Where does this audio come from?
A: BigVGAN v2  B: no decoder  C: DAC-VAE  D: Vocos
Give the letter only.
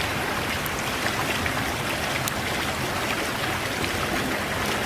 B